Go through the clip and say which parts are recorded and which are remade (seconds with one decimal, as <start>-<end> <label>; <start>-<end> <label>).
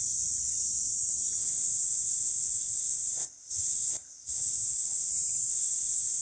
0.0-1.4 recorded; 1.4-5.1 remade; 5.1-5.5 recorded; 5.5-6.2 remade